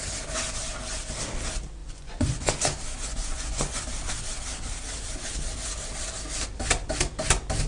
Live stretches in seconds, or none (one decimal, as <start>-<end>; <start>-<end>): 0.0-1.8; 2.5-2.9; 3.8-7.7